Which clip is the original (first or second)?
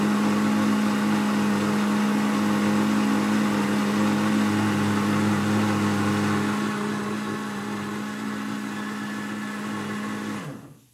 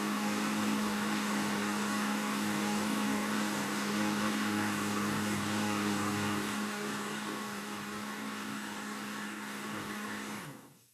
first